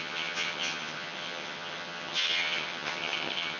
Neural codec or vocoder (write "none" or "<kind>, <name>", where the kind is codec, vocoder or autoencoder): vocoder, HiFi-GAN